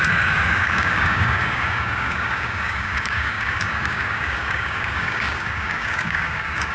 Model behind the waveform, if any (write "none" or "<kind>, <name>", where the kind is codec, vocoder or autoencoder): codec, DAC